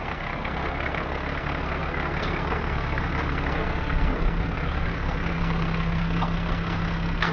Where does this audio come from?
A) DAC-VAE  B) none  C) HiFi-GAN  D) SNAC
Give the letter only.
D